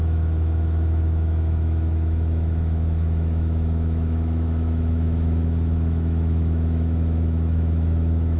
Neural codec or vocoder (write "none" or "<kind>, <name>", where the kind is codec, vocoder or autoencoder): autoencoder, DAC-VAE